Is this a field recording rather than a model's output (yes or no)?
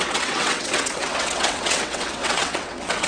no